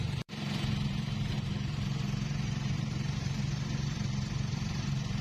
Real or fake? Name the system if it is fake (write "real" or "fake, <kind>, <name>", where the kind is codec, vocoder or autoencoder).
fake, vocoder, BigVGAN v2